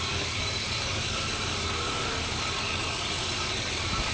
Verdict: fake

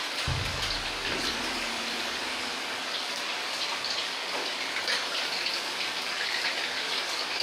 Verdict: fake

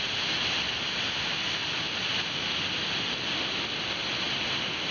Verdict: real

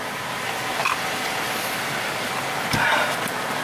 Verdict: real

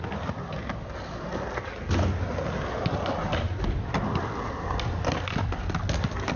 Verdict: real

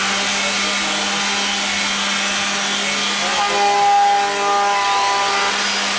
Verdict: real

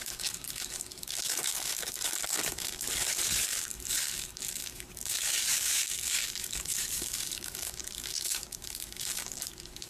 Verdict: fake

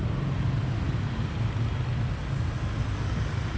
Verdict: real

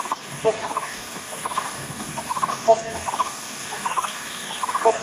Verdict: fake